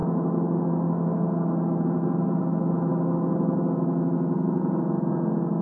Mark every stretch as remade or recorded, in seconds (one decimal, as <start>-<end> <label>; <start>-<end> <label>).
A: 0.0-5.6 recorded